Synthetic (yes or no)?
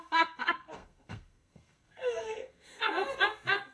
yes